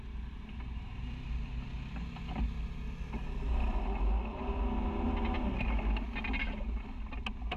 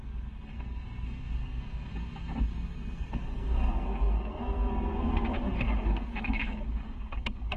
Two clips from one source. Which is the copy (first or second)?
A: second